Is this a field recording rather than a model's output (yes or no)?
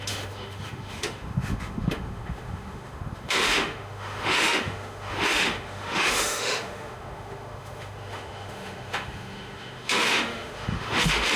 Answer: no